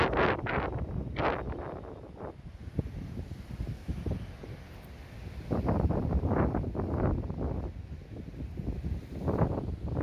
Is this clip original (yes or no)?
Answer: yes